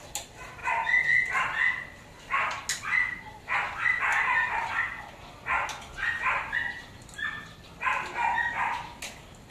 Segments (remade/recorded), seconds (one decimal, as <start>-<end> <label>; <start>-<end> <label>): 0.0-9.5 recorded